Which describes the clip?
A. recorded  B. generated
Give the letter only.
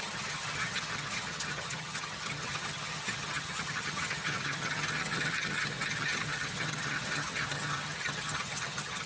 B